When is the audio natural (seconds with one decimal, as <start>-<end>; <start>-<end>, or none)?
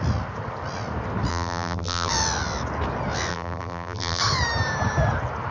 0.0-1.3; 2.1-3.3; 4.2-5.5